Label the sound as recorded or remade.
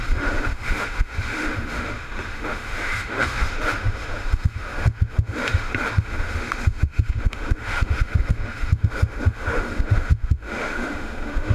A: remade